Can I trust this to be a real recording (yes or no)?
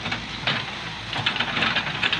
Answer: no